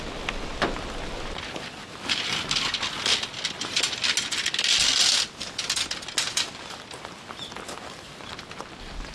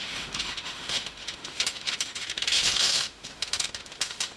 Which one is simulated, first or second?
second